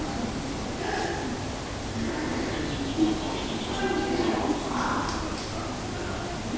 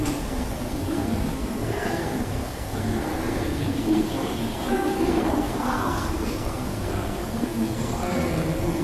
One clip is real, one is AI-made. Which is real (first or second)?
first